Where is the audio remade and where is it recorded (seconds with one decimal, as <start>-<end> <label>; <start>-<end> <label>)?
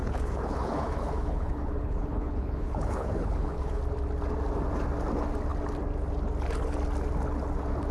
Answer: 0.0-3.8 remade; 3.8-7.9 recorded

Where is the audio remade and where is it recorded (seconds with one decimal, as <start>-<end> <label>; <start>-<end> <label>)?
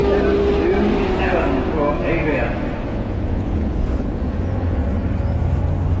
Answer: 0.0-2.8 recorded; 2.8-4.8 remade; 4.8-6.0 recorded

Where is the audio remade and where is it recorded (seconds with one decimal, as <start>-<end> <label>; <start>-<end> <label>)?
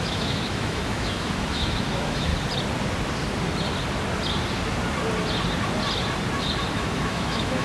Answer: 0.0-2.3 remade; 2.3-6.7 recorded; 6.7-7.6 remade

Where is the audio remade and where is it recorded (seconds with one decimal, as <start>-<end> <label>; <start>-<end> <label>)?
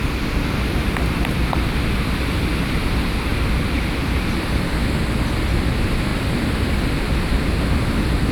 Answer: 0.0-8.3 recorded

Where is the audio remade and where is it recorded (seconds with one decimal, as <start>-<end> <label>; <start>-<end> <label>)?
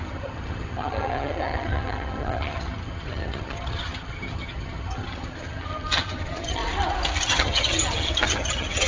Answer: 0.0-6.6 remade; 6.6-7.2 recorded; 7.2-8.9 remade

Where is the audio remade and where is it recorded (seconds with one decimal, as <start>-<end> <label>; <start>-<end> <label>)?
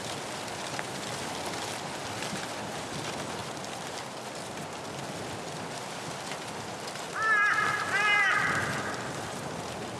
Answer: 0.0-10.0 recorded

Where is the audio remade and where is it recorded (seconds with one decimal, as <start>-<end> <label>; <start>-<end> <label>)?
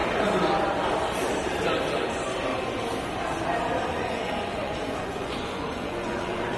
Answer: 0.0-3.9 recorded; 3.9-6.6 remade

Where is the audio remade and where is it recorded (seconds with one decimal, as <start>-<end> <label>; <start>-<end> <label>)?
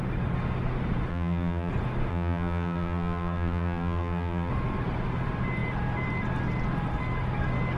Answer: 0.0-1.1 recorded; 1.1-1.7 remade; 1.7-2.1 recorded; 2.1-4.5 remade; 4.5-7.8 recorded